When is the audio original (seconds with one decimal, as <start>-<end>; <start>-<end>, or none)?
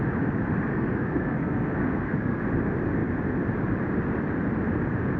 0.0-0.7; 2.4-5.2